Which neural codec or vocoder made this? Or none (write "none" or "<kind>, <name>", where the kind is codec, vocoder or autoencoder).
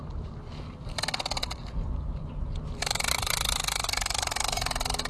none